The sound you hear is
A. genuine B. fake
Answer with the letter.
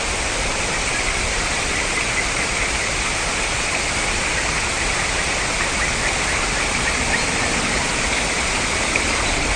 A